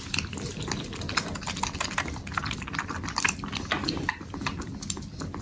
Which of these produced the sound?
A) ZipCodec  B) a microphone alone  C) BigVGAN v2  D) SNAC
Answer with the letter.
B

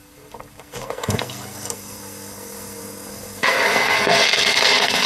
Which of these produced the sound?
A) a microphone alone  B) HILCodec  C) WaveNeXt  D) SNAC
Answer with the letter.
D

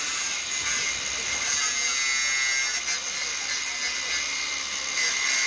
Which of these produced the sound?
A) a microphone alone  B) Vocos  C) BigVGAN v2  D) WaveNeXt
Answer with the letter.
A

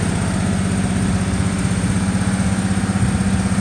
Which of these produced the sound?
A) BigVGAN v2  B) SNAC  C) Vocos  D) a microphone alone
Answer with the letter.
D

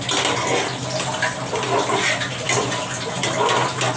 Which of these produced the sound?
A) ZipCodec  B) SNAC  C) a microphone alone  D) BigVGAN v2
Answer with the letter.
C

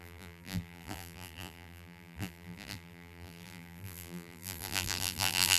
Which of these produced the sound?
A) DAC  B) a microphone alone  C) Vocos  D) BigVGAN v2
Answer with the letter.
D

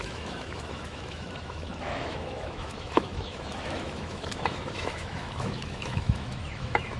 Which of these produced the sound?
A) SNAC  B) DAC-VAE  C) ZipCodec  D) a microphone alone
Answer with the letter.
B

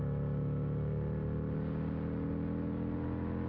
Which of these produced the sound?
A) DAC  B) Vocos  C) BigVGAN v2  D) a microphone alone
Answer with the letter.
D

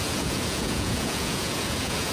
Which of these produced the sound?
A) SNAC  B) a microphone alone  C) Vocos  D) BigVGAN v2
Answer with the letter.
C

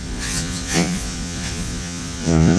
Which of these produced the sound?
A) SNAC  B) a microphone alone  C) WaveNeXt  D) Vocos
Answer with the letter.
D